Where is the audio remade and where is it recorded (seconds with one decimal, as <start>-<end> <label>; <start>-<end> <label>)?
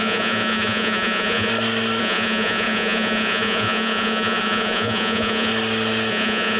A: 0.0-1.5 remade; 1.5-2.0 recorded; 2.0-5.5 remade; 5.5-6.1 recorded; 6.1-6.6 remade